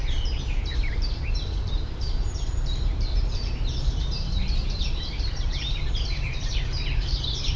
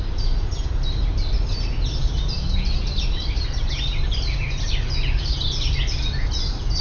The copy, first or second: first